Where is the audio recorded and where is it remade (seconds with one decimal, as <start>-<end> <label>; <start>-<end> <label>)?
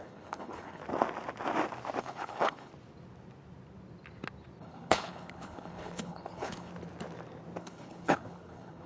0.0-0.8 remade; 0.8-2.0 recorded; 2.0-2.7 remade; 2.7-4.6 recorded; 4.6-6.7 remade; 6.7-7.6 recorded; 7.6-8.9 remade